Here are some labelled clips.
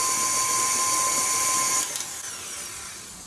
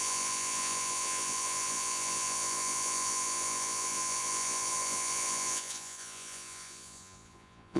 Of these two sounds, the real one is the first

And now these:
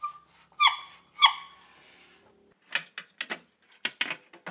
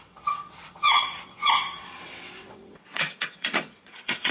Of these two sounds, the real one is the first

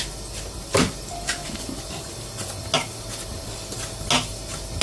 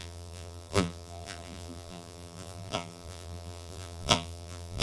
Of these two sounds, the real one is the first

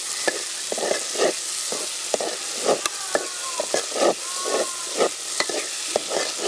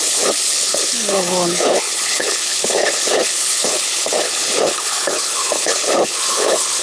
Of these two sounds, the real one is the first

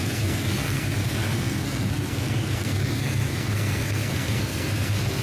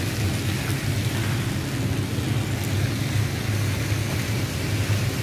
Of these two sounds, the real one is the second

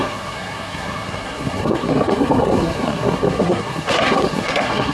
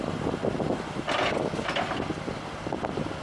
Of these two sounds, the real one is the second